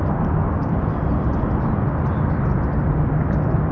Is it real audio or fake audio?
real